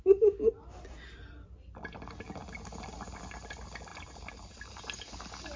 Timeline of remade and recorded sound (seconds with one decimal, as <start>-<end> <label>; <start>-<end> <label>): 0.0-3.9 recorded; 3.9-4.8 remade; 4.8-5.6 recorded